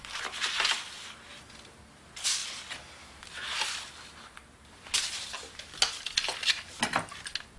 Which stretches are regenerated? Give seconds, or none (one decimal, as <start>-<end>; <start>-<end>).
none

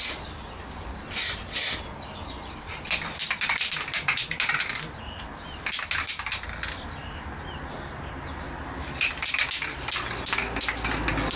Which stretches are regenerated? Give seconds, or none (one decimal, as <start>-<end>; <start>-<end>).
7.0-9.3

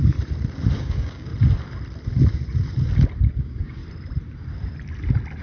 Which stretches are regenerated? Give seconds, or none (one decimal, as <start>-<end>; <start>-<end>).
0.8-1.3; 3.4-3.8

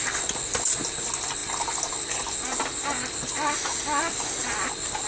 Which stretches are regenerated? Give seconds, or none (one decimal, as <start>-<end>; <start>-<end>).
none

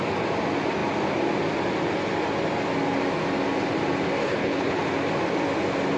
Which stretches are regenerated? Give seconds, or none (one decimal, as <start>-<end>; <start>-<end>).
4.2-4.8

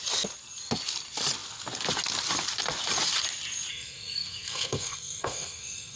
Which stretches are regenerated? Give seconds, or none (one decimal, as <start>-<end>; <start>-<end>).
3.7-6.0

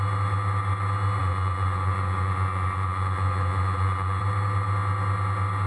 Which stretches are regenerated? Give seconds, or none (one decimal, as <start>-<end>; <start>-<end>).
1.2-4.2